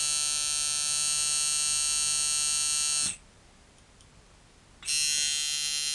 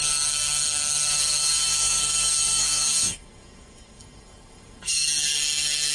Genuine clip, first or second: first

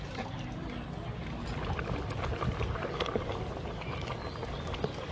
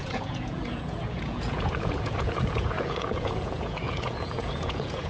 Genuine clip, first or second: first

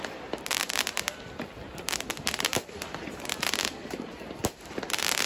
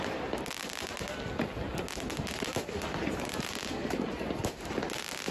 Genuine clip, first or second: second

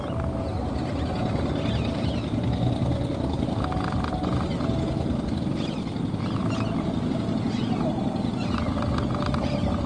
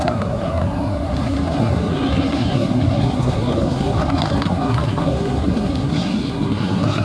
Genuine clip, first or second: first